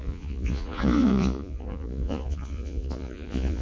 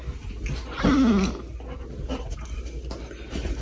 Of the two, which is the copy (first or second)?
first